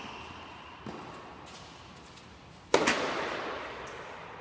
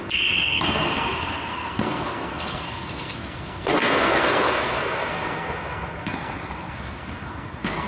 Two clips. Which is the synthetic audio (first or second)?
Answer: second